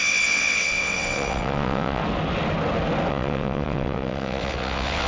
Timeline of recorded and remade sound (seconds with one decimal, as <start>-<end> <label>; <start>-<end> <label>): 0.0-2.0 remade; 2.0-3.1 recorded; 3.1-5.1 remade